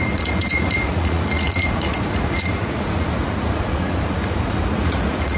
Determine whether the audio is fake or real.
fake